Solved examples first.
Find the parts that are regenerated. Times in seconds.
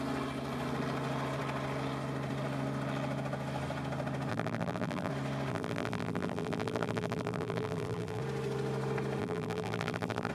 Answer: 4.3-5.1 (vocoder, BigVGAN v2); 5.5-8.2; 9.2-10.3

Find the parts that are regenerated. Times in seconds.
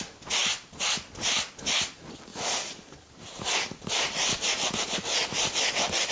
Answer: 2.3-6.1 (vocoder, BigVGAN v2)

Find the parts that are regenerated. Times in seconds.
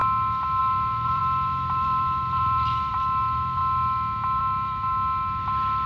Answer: 0.6-3.6 (vocoder, BigVGAN v2); 4.4-4.9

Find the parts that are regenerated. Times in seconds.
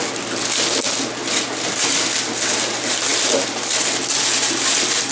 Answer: 1.2-1.9 (vocoder, BigVGAN v2); 3.1-5.1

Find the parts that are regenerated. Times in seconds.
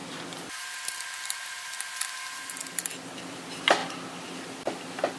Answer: 3.1-3.8 (vocoder, BigVGAN v2)